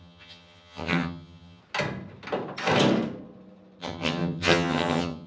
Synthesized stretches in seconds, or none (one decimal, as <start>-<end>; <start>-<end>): 0.0-1.6; 3.8-5.3